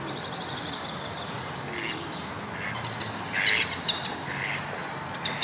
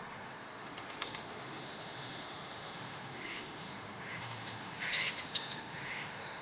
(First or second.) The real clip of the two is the first